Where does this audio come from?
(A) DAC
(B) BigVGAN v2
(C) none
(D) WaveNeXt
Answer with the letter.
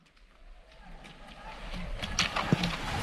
C